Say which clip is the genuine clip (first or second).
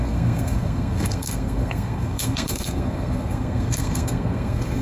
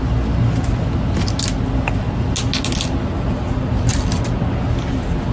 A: second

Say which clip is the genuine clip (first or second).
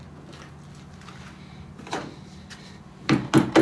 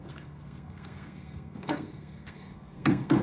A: first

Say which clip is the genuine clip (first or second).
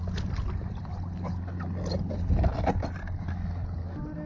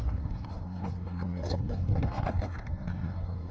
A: first